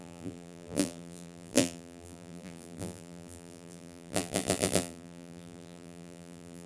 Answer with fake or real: fake